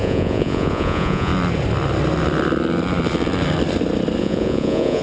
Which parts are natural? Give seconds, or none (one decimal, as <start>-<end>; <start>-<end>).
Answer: 1.3-4.2